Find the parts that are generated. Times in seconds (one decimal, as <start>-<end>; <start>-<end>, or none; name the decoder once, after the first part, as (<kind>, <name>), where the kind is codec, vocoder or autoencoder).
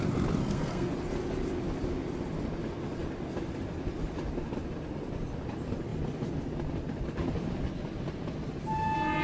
0.4-0.9 (codec, SNAC)